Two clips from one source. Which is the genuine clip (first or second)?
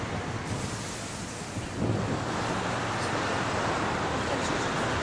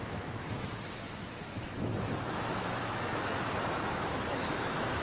first